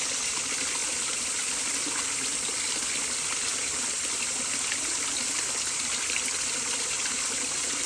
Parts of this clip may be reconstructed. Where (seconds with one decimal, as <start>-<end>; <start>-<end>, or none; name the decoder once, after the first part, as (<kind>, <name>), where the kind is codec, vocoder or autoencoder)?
none